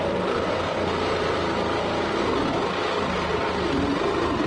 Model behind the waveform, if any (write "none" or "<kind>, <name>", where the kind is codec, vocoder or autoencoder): none